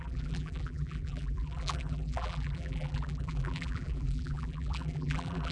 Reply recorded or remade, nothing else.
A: remade